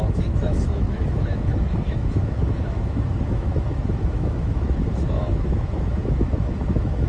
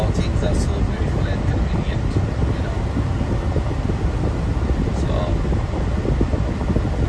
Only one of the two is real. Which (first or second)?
second